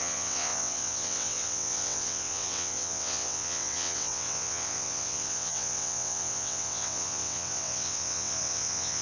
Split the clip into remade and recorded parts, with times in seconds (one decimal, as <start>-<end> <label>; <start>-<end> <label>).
0.0-9.0 remade